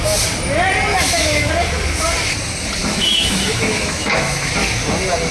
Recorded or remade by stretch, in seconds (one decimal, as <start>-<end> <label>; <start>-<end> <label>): 0.0-0.9 recorded; 0.9-1.5 remade; 1.5-2.8 recorded; 2.8-4.5 remade; 4.5-5.3 recorded